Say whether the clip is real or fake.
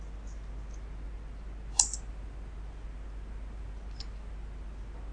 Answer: real